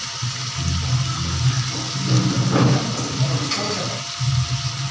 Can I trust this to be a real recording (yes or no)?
yes